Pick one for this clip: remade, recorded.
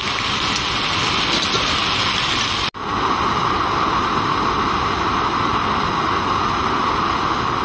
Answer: recorded